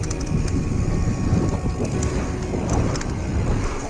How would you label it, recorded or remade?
recorded